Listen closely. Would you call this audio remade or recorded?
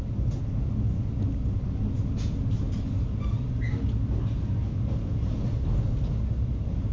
recorded